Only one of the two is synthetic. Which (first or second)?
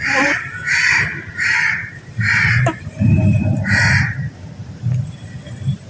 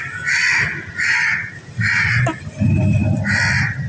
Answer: first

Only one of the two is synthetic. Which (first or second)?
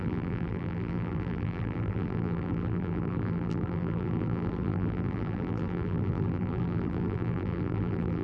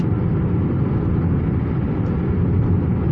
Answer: first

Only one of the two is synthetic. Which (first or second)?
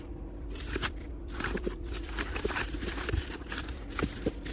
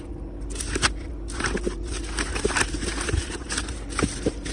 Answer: first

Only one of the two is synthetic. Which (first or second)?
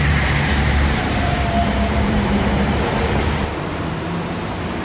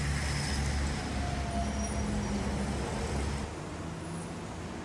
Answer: first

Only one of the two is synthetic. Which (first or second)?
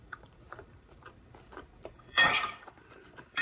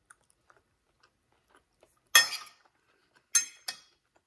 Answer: first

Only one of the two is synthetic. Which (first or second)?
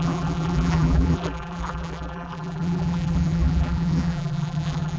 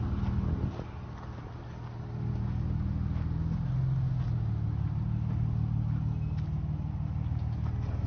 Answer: first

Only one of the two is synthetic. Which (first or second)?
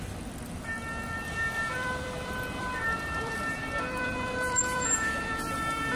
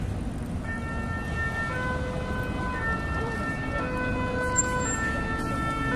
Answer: first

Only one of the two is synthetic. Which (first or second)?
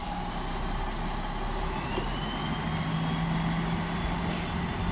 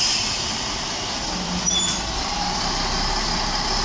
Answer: second